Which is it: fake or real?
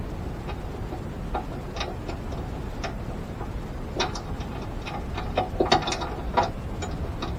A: real